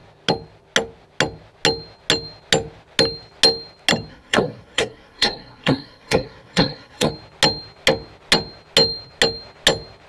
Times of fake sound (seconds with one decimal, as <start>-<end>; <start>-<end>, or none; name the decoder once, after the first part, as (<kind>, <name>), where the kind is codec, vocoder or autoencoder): 4.1-7.1 (codec, SNAC)